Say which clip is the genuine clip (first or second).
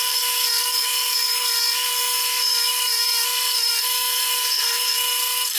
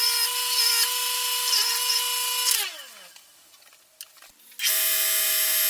second